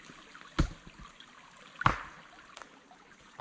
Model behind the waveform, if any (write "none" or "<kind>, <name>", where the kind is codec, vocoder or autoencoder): none